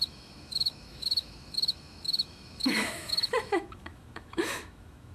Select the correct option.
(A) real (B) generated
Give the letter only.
B